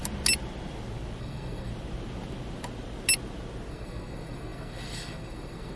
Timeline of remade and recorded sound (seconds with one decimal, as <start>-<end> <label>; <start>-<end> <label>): 0.0-1.2 recorded; 1.2-1.7 remade; 1.7-3.7 recorded; 3.7-5.8 remade